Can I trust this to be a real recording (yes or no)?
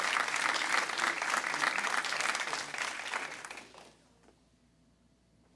yes